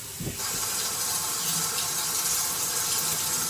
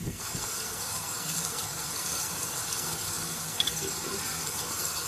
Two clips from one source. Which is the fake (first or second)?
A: second